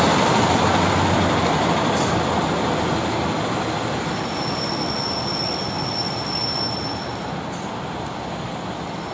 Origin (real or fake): real